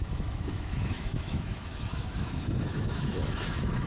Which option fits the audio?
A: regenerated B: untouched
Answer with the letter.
A